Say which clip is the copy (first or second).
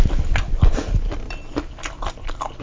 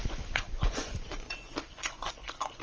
second